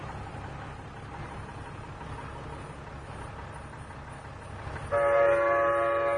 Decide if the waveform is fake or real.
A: real